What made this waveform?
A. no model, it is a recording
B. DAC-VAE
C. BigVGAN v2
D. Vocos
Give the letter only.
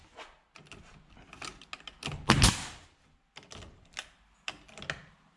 A